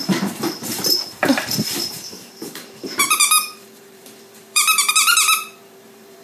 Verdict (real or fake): fake